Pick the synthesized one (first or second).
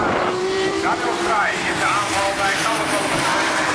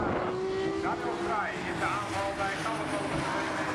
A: first